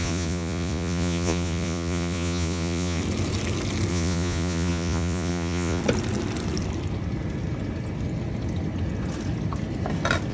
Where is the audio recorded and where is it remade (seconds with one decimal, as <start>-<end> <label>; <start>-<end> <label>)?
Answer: 0.0-3.0 remade; 3.0-3.9 recorded; 3.9-5.8 remade; 5.8-10.3 recorded